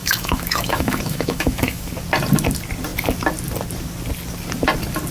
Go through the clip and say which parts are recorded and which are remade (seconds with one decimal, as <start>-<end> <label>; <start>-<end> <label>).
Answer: 0.0-1.9 remade; 1.9-5.1 recorded